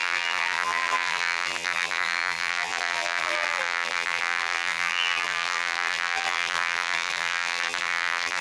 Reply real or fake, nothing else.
fake